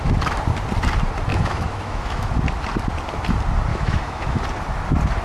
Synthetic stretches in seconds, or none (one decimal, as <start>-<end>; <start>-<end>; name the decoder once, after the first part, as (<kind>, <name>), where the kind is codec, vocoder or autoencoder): 1.3-2.3 (autoencoder, DAC-VAE); 3.7-4.4